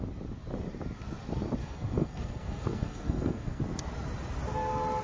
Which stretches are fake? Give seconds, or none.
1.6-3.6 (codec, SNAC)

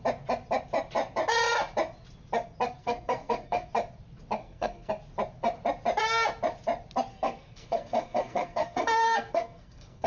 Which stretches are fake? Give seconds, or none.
2.8-3.7 (codec, SNAC); 4.4-4.9; 7.1-10.1

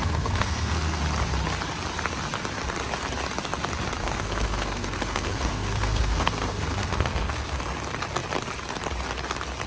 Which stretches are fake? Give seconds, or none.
0.0-1.0 (codec, SNAC); 4.0-7.6

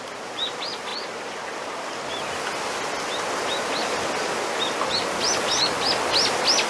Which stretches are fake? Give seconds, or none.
none